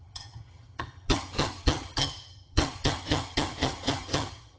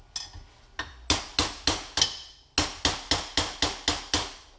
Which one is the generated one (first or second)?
first